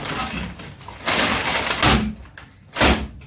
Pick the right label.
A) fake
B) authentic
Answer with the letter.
B